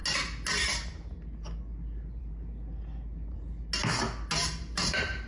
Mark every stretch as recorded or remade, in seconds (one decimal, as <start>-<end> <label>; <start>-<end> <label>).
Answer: 0.0-4.4 recorded; 4.4-5.3 remade